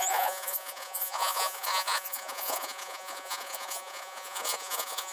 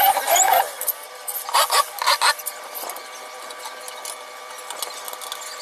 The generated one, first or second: first